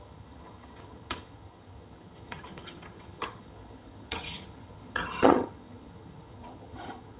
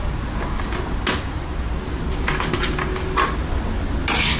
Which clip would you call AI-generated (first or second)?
first